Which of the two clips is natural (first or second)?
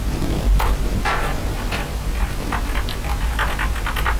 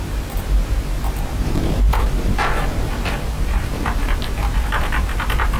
first